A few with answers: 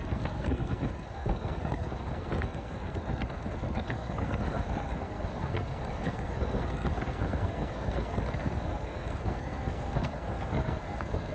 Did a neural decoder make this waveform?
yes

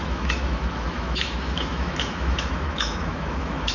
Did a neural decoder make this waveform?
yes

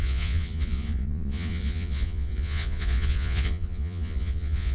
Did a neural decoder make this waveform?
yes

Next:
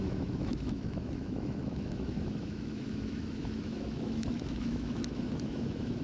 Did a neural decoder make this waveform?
yes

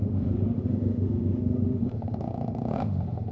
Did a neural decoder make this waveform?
yes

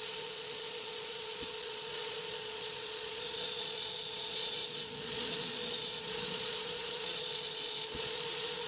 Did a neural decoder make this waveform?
yes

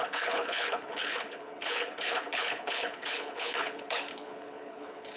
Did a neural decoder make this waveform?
yes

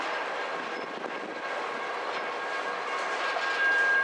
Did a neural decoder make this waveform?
no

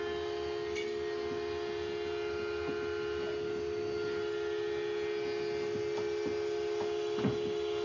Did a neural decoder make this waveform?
no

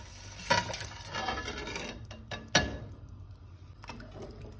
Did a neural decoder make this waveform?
no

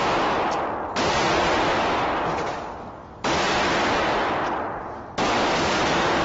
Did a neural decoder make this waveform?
no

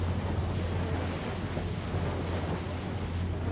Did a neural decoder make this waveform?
no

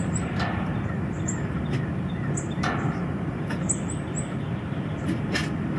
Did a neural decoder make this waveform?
no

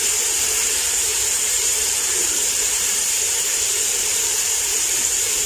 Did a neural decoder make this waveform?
yes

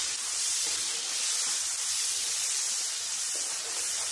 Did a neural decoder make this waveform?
yes